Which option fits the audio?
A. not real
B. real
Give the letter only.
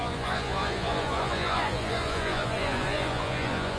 A